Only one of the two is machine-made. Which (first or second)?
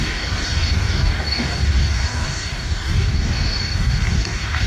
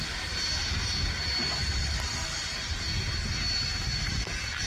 first